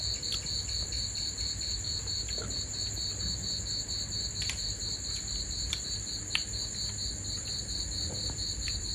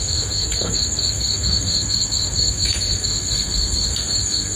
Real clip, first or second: first